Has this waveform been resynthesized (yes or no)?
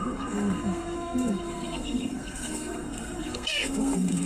yes